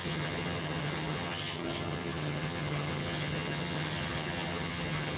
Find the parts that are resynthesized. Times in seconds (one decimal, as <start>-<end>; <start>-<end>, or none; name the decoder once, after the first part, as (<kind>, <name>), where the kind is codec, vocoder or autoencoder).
0.0-5.2 (vocoder, HiFi-GAN)